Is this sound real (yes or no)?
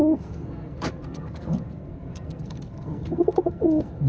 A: no